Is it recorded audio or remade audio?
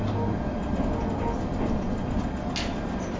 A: recorded